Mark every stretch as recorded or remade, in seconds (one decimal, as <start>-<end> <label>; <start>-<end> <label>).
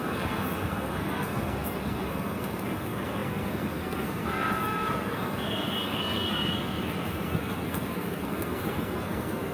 0.0-9.5 remade